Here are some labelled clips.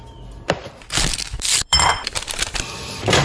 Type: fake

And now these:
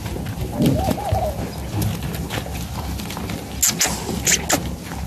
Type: real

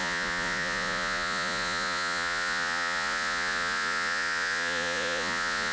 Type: fake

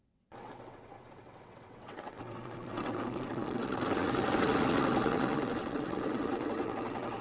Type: fake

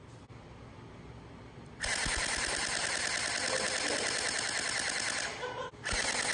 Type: real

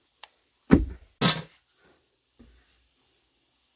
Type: real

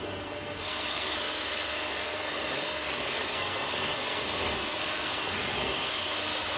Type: fake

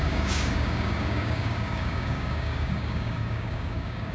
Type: fake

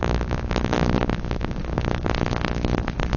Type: fake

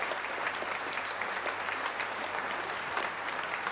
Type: fake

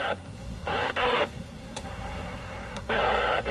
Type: fake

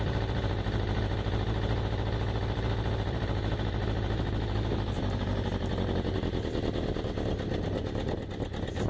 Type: real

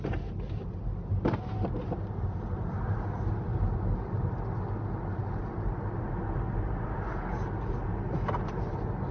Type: real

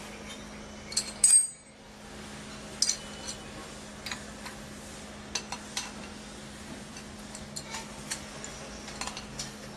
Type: real